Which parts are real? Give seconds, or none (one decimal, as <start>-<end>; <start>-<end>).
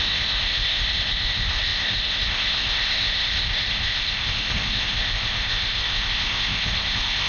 none